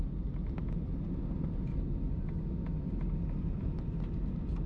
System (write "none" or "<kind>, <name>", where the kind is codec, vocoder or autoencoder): none